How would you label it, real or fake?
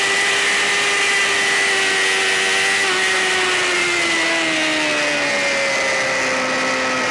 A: real